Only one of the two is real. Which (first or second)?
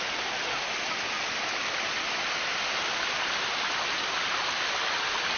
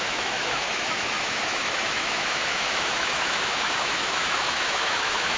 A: first